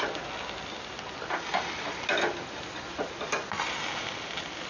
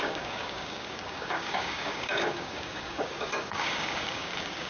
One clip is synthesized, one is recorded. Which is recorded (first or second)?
first